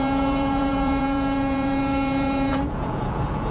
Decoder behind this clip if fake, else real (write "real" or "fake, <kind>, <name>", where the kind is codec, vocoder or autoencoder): fake, vocoder, Vocos